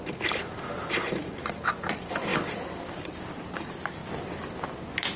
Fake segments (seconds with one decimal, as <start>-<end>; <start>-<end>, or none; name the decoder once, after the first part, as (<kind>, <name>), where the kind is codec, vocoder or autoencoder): 0.0-2.3 (vocoder, BigVGAN v2); 2.9-4.0